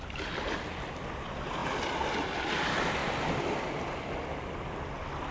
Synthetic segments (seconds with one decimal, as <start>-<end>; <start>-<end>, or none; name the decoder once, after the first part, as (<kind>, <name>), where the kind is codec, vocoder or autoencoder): 0.0-1.6 (vocoder, BigVGAN v2); 2.3-5.3